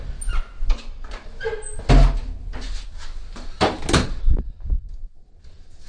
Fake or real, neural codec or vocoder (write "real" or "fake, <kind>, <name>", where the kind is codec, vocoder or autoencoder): real